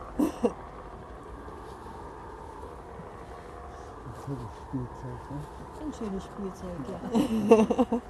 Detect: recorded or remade recorded